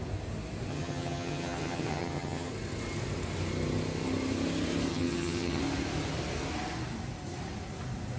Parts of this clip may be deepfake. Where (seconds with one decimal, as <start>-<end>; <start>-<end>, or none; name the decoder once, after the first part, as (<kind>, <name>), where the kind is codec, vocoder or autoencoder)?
0.7-2.5 (vocoder, HiFi-GAN); 4.9-5.6